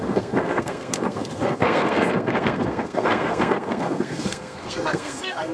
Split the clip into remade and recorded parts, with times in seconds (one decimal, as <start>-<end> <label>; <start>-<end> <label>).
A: 0.0-5.5 remade